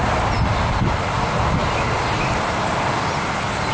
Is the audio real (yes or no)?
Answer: yes